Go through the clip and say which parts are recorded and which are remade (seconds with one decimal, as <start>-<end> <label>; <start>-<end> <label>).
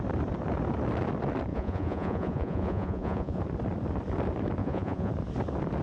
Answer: 0.0-1.5 recorded; 1.5-3.4 remade; 3.4-4.6 recorded; 4.6-5.1 remade; 5.1-5.8 recorded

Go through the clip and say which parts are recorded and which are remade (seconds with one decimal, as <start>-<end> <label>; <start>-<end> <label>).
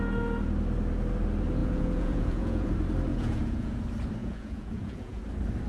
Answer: 0.0-1.6 recorded; 1.6-2.7 remade; 2.7-3.1 recorded; 3.1-3.8 remade; 3.8-4.2 recorded; 4.2-5.2 remade; 5.2-5.7 recorded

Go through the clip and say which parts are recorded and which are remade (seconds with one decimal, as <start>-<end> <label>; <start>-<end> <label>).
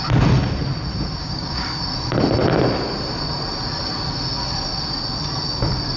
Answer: 0.0-1.2 recorded; 1.2-1.8 remade; 1.8-6.0 recorded